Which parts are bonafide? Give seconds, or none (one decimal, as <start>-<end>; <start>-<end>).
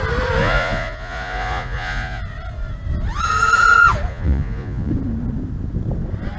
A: 0.0-0.4; 2.2-4.1; 4.9-6.4